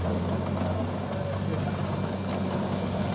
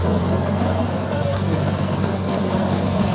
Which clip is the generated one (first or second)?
second